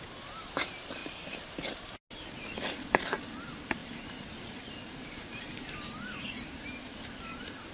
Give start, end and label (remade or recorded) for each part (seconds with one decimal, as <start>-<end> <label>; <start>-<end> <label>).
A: 0.0-1.0 recorded; 1.0-1.5 remade; 1.5-3.8 recorded; 3.8-6.7 remade; 6.7-7.7 recorded